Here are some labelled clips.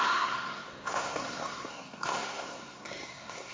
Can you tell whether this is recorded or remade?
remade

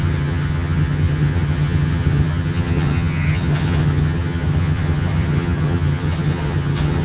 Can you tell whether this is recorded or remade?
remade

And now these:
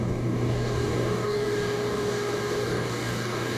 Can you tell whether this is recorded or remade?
remade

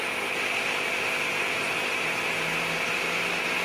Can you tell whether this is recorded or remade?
recorded